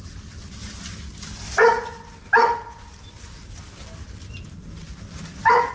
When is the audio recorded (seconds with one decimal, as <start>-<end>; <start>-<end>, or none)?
0.0-5.7